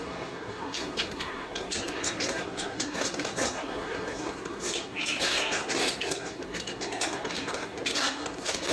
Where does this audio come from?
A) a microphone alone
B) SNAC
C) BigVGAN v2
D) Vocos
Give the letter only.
B